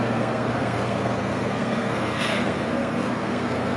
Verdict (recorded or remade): remade